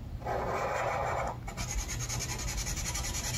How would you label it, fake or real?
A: fake